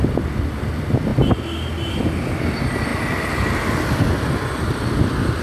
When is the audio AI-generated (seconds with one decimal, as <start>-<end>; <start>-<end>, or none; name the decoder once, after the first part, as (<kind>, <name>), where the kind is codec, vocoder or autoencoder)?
none